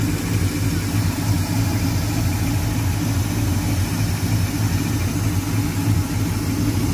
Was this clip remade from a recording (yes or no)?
no